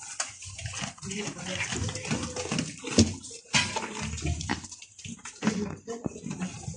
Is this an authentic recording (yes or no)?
yes